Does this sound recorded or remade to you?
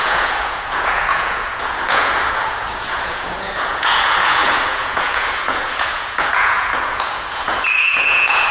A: remade